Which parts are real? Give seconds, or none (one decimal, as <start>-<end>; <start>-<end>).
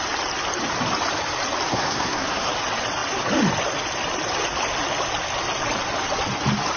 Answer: 0.0-1.7; 2.5-6.8